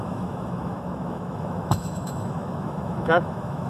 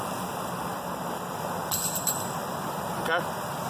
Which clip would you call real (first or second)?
second